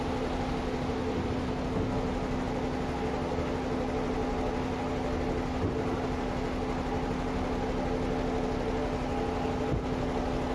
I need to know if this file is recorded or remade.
recorded